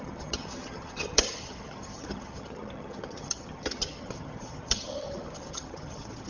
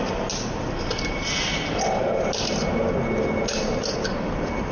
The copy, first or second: first